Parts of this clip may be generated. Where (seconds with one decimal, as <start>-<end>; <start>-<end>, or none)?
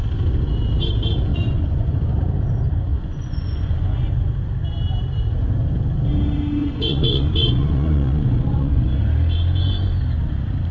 1.3-2.2; 2.9-4.1; 6.6-8.8